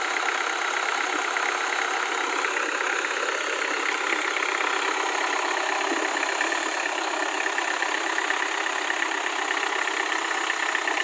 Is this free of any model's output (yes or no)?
yes